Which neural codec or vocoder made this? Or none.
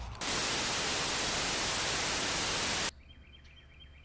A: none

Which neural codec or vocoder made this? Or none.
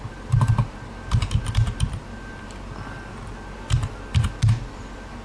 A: none